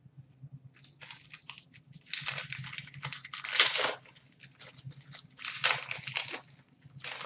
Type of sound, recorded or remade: recorded